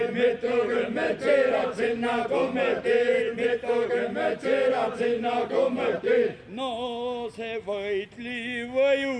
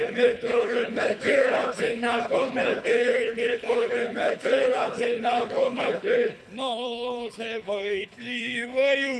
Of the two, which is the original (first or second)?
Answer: first